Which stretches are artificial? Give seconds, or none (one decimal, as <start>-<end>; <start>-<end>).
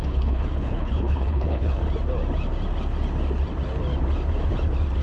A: 0.0-1.8